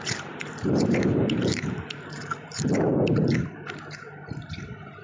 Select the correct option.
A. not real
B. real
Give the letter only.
A